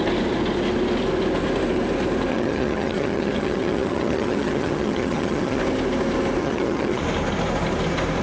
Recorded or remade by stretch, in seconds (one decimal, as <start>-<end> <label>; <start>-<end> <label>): 0.0-2.3 recorded; 2.3-5.6 remade; 5.6-6.4 recorded; 6.4-7.0 remade; 7.0-8.2 recorded